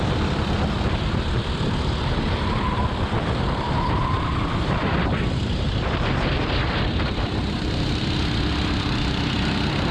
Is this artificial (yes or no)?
yes